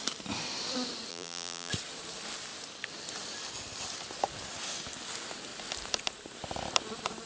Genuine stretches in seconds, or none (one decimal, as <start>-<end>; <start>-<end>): 0.0-1.1; 1.7-7.3